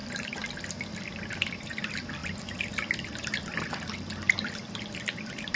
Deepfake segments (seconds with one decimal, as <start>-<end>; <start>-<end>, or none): none